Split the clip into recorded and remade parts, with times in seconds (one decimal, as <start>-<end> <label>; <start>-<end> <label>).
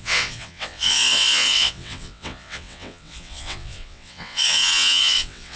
0.0-5.6 remade